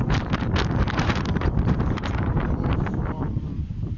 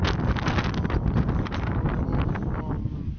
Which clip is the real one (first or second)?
second